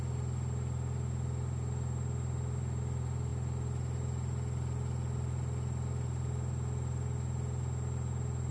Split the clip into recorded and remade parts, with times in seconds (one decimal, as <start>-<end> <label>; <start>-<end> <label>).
0.0-8.5 recorded